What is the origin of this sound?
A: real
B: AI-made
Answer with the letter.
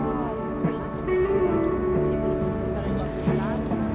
A